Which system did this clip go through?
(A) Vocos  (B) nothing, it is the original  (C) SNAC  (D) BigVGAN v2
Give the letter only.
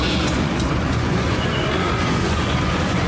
A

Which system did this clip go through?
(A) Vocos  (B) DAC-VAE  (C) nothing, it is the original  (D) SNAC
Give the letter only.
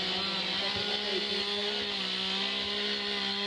C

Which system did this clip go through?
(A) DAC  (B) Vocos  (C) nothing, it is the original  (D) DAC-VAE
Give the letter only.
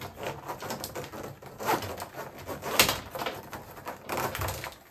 C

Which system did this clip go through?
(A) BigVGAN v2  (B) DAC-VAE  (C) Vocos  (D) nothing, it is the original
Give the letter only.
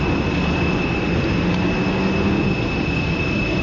D